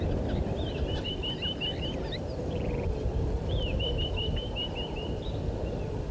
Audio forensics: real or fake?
real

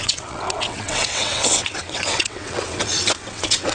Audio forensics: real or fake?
fake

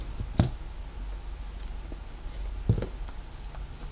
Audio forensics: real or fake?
real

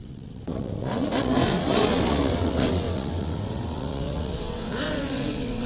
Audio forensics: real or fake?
fake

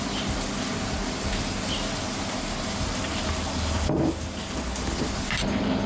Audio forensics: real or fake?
real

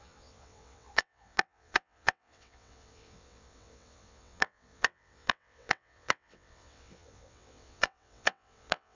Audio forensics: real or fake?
fake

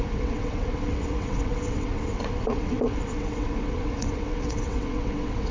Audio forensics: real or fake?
fake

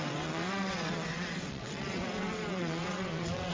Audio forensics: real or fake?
fake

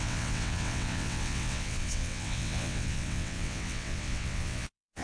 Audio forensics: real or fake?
fake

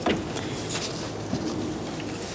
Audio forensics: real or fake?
real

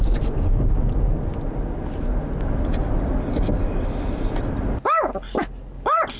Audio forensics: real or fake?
real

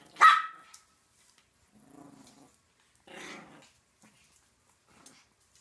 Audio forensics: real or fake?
real